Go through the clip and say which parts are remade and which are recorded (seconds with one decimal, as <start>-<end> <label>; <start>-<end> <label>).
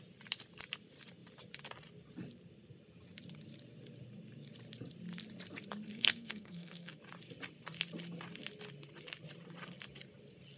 0.0-5.9 recorded; 5.9-7.0 remade; 7.0-10.6 recorded